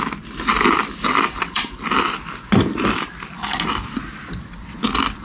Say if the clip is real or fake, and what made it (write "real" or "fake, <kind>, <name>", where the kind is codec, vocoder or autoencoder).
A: real